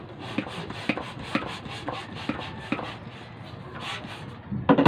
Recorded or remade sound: recorded